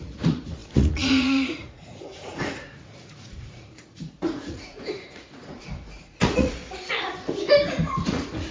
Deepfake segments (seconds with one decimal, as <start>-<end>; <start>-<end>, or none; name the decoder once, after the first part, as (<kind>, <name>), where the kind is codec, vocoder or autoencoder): 0.0-6.6 (vocoder, Vocos); 8.0-8.5

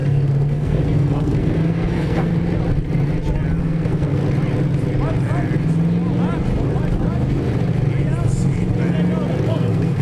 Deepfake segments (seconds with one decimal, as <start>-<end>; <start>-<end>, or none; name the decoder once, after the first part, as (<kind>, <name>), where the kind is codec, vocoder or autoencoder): 0.0-2.3 (codec, SNAC); 3.6-4.2; 9.5-10.0

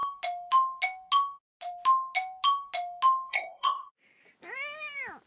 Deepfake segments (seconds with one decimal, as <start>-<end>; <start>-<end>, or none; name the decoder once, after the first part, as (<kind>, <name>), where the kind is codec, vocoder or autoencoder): 3.3-3.9 (codec, SNAC)

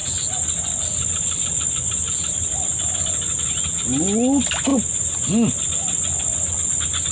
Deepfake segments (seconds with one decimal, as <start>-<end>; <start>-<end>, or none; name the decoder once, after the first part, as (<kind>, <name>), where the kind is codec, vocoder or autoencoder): none

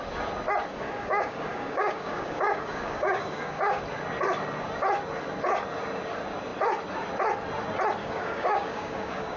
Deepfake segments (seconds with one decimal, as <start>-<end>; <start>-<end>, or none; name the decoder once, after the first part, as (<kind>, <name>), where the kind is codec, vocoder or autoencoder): 0.7-3.8 (codec, DAC); 8.0-9.4

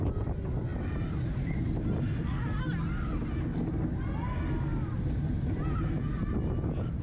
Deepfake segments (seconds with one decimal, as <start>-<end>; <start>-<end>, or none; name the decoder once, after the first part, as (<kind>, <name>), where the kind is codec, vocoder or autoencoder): none